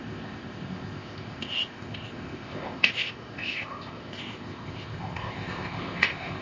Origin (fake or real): fake